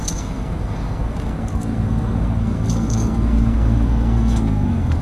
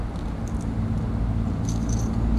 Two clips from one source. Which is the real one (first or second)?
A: second